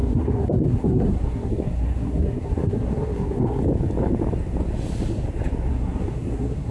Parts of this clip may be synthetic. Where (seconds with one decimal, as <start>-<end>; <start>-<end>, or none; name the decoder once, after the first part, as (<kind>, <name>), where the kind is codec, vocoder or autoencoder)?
0.0-3.6 (codec, SNAC); 5.7-6.7